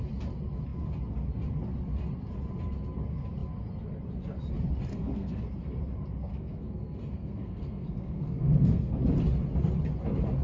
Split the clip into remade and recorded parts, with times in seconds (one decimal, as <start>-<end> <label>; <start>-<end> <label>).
0.0-4.9 recorded; 4.9-5.4 remade; 5.4-6.3 recorded; 6.3-9.0 remade; 9.0-10.4 recorded